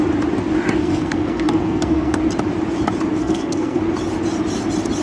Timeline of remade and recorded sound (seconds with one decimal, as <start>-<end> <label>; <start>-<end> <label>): 0.0-0.8 recorded; 0.8-2.2 remade; 2.2-3.2 recorded; 3.2-3.8 remade; 3.8-5.0 recorded